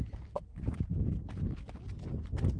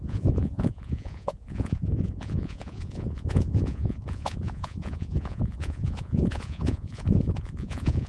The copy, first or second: second